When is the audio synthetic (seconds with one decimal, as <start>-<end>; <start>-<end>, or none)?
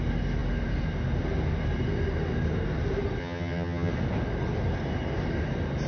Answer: 3.2-3.9